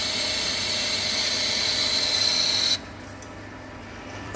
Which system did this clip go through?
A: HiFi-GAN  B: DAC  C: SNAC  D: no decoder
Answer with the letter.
D